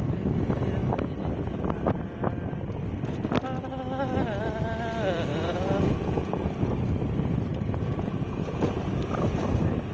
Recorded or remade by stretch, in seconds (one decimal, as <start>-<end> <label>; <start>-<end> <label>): 0.0-5.3 recorded; 5.3-6.5 remade; 6.5-7.5 recorded; 7.5-8.7 remade; 8.7-9.9 recorded